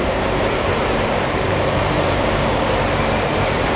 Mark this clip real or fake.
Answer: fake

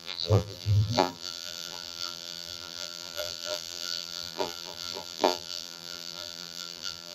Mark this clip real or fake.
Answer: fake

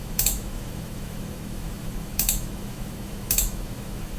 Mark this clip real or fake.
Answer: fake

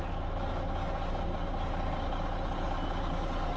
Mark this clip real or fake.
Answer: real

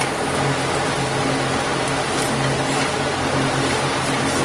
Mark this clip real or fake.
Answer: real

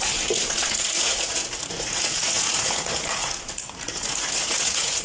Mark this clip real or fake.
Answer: fake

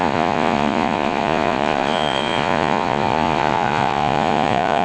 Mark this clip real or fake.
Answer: fake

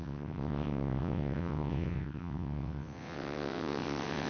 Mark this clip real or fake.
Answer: fake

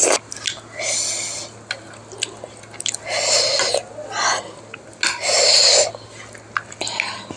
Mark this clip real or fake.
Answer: real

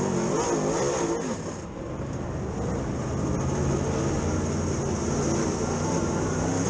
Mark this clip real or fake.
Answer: real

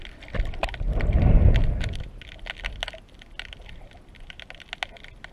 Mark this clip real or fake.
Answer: real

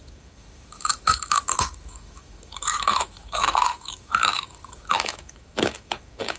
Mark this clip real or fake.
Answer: fake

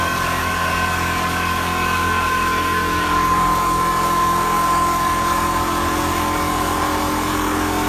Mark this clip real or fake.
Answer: fake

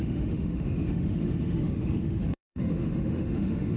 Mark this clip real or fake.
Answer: fake